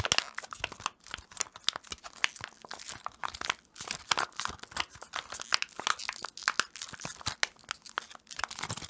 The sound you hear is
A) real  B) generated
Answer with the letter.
A